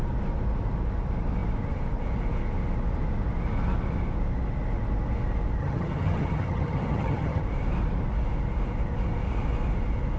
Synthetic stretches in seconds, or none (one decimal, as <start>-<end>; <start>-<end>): 5.6-7.4